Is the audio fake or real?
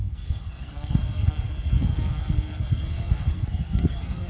fake